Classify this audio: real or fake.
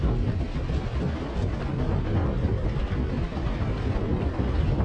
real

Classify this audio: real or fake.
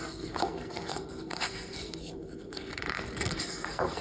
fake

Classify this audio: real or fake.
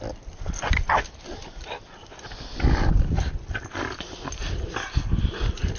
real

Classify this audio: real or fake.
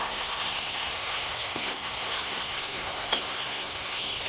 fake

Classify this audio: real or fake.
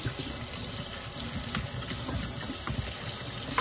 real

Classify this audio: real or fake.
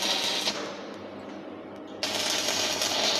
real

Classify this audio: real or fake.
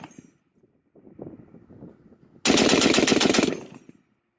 real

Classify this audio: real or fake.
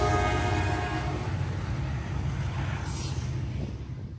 real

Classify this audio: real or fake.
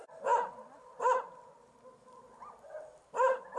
real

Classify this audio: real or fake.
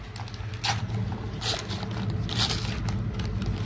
real